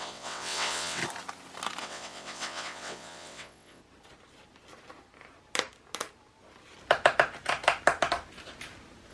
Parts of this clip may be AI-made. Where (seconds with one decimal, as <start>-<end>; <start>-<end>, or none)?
0.0-1.0; 1.8-3.8